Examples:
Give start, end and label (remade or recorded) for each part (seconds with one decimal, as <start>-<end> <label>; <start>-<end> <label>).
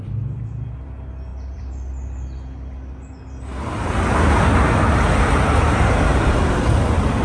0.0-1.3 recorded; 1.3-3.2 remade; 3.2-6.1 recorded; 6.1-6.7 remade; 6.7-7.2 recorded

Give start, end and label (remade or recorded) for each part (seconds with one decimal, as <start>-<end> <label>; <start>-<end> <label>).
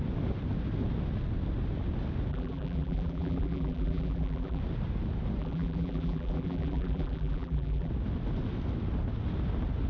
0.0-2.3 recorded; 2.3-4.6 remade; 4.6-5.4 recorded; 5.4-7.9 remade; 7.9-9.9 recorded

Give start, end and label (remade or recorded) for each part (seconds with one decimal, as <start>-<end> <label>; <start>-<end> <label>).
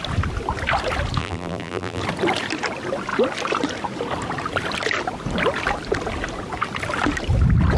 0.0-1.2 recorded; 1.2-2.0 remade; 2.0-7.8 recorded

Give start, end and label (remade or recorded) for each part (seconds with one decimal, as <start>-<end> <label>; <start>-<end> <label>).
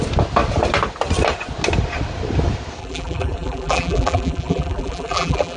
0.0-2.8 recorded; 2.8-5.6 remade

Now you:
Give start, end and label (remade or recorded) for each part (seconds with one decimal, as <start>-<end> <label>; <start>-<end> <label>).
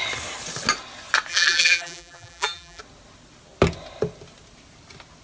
0.0-1.3 recorded; 1.3-2.8 remade; 2.8-5.2 recorded